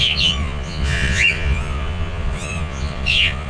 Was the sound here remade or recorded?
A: remade